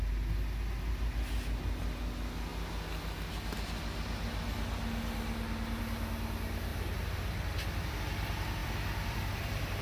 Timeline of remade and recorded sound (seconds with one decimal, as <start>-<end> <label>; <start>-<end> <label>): 0.0-6.7 recorded; 6.7-8.0 remade; 8.0-8.6 recorded; 8.6-9.8 remade